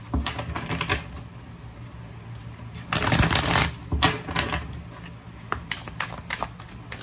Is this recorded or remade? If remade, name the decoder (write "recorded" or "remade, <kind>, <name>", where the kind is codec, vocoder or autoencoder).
recorded